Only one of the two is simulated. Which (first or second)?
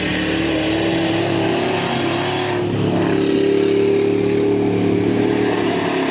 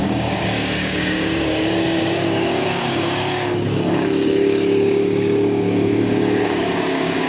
second